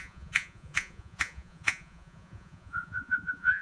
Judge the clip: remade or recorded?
remade